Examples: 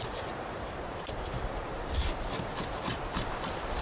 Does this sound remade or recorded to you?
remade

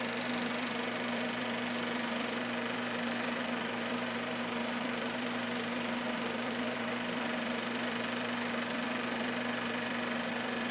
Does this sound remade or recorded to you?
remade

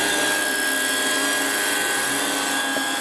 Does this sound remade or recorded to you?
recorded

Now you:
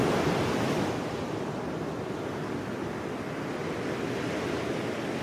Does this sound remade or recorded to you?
recorded